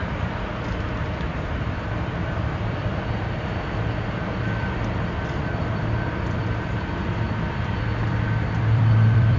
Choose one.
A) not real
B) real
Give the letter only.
A